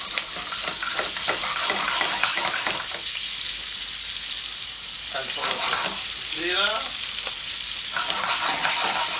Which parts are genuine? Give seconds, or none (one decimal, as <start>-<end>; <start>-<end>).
0.0-9.2